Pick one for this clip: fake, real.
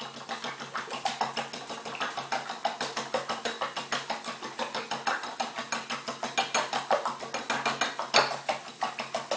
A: real